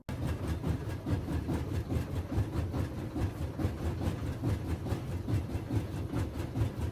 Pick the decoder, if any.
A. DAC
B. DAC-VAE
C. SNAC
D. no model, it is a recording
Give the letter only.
D